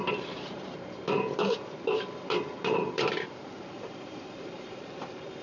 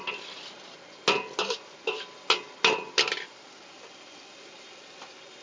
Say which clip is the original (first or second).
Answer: second